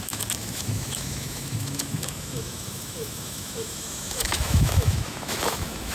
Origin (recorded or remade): remade